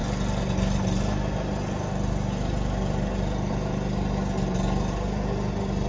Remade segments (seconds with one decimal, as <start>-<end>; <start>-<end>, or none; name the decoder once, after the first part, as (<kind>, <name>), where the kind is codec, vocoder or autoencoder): none